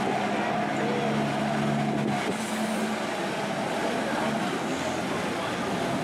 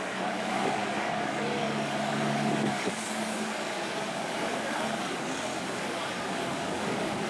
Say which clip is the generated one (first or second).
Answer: second